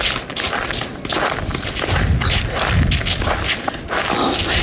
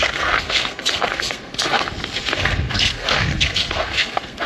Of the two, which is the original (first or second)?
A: first